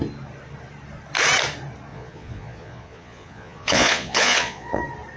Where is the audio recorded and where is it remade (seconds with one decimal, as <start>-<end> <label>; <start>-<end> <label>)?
0.0-1.9 recorded; 1.9-4.8 remade; 4.8-5.2 recorded